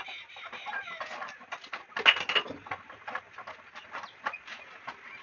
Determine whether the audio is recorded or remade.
recorded